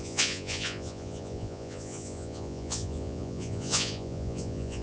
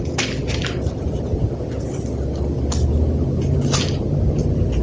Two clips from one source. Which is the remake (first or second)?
first